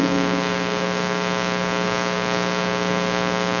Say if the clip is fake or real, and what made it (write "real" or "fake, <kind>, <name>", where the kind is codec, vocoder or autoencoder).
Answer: fake, codec, DAC